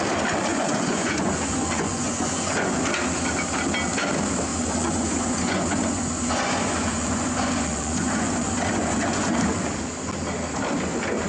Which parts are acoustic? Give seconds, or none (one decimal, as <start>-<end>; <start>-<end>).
0.0-0.5; 2.8-4.5; 9.3-11.3